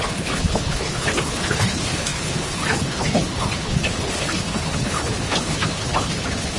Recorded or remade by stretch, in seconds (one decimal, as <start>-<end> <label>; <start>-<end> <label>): 0.0-6.6 remade